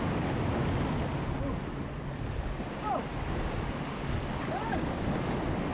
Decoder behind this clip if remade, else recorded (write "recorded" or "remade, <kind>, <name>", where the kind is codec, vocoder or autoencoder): recorded